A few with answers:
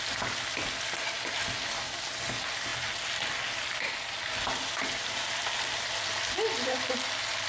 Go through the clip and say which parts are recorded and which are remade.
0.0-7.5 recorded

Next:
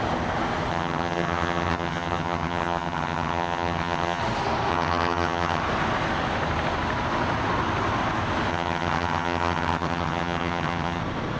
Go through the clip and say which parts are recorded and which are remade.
0.0-0.7 recorded; 0.7-4.2 remade; 4.2-4.7 recorded; 4.7-5.6 remade; 5.6-8.5 recorded; 8.5-11.0 remade; 11.0-11.4 recorded

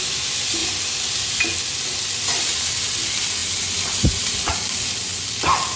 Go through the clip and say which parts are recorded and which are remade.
0.0-5.8 recorded

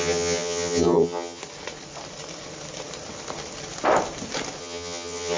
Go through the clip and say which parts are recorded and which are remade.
0.0-1.4 remade; 1.4-4.6 recorded; 4.6-5.4 remade

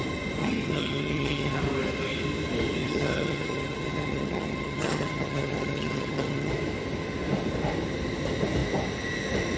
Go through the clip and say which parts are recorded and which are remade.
0.0-0.4 recorded; 0.4-1.6 remade; 1.6-2.8 recorded; 2.8-6.5 remade; 6.5-9.6 recorded

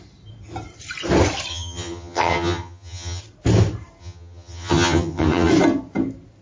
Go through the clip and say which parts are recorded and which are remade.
0.0-1.5 recorded; 1.5-3.2 remade; 3.2-4.0 recorded; 4.0-5.5 remade; 5.5-6.4 recorded

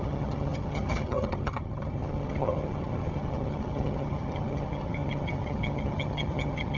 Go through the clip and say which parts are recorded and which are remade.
0.0-6.8 remade

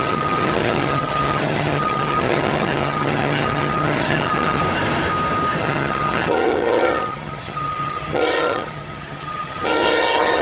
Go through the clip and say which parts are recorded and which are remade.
0.0-4.6 remade; 4.6-5.6 recorded; 5.6-10.4 remade